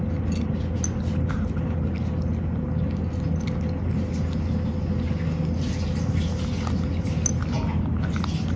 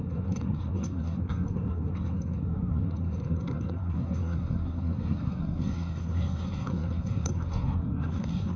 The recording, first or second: first